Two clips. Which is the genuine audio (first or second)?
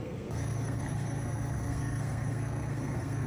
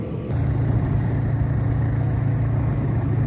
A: second